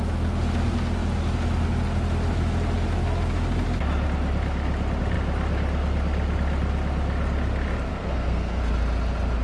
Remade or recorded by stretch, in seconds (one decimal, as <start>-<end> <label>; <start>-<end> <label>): 0.0-7.9 recorded; 7.9-8.6 remade; 8.6-9.4 recorded